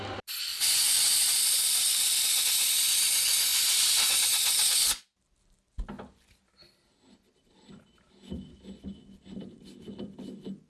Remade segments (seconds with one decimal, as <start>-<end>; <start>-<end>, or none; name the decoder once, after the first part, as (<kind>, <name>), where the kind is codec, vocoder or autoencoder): none